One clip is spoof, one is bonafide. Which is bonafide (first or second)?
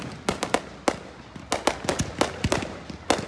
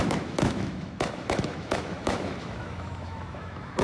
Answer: first